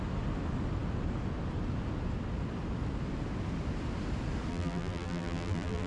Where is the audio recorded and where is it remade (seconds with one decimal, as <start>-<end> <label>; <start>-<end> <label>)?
0.0-4.5 recorded; 4.5-5.9 remade

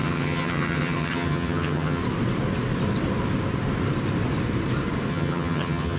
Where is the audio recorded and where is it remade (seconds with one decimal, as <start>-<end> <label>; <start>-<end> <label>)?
0.0-2.0 remade; 2.0-5.1 recorded; 5.1-6.0 remade

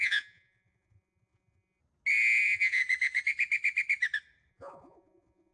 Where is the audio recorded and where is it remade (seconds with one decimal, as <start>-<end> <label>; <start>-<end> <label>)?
0.0-1.8 remade; 1.8-2.4 recorded; 2.4-2.8 remade; 2.8-4.5 recorded; 4.5-5.5 remade

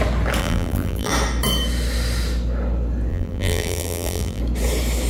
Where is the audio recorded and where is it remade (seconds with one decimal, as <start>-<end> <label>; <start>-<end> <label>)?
0.0-0.4 recorded; 0.4-1.1 remade; 1.1-3.1 recorded; 3.1-4.4 remade; 4.4-5.1 recorded

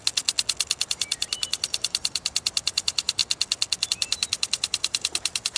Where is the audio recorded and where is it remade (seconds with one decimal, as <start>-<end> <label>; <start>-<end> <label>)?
0.0-0.9 recorded; 0.9-3.2 remade; 3.2-3.9 recorded; 3.9-5.6 remade